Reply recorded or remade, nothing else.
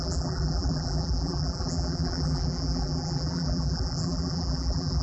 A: remade